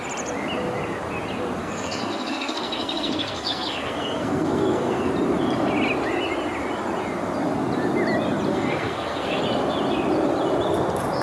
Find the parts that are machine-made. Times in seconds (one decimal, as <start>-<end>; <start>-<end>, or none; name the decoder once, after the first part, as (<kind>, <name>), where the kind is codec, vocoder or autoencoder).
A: 1.6-5.1 (codec, SNAC); 8.5-9.4